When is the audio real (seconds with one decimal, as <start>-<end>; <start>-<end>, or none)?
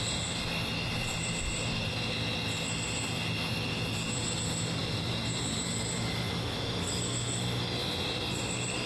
0.0-4.8; 5.7-8.9